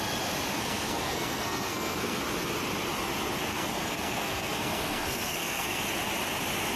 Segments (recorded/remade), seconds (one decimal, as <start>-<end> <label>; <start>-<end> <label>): 0.0-0.5 recorded; 0.5-2.2 remade; 2.2-3.5 recorded; 3.5-5.8 remade; 5.8-6.8 recorded